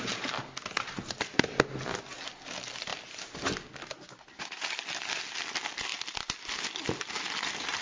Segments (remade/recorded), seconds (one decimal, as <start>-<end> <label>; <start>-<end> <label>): 0.0-7.8 recorded